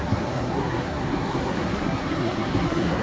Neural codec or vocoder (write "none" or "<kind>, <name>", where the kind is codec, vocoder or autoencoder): codec, SNAC